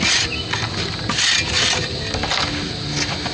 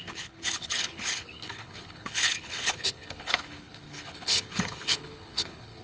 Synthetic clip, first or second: second